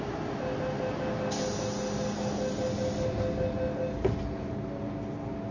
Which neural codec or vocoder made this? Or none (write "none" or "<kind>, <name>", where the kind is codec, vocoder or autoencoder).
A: none